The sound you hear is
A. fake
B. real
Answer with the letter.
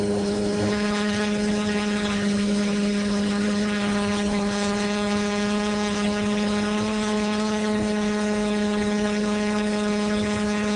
A